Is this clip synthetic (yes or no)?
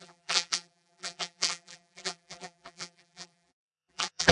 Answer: yes